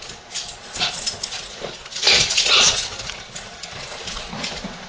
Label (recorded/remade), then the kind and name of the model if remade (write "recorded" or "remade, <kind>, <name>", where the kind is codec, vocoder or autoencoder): remade, vocoder, Vocos